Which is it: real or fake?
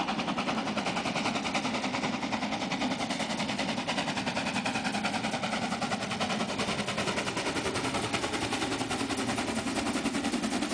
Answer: real